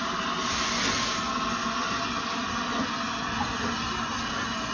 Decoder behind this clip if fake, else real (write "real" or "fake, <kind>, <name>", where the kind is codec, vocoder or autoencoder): real